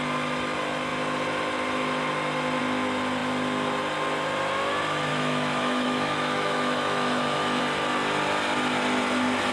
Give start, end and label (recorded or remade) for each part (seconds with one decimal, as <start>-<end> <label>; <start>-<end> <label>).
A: 0.0-5.1 recorded; 5.1-7.6 remade; 7.6-9.5 recorded